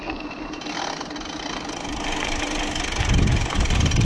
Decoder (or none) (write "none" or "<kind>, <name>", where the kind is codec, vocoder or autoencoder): none